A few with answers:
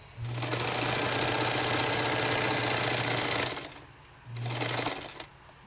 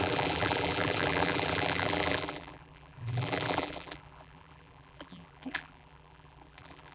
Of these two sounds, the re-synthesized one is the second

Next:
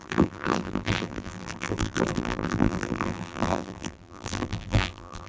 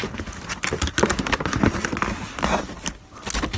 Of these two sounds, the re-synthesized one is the first